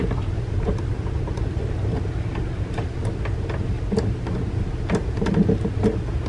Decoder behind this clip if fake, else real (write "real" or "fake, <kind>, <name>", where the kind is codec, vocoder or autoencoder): real